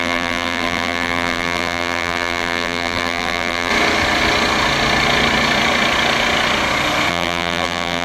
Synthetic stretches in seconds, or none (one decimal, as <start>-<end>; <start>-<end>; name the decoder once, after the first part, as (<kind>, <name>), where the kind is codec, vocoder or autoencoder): 0.0-3.7 (vocoder, BigVGAN v2); 7.1-8.0